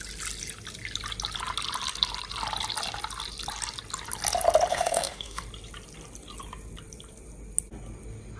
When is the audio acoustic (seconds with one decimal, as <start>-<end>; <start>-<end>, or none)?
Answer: 0.0-4.7; 5.4-8.4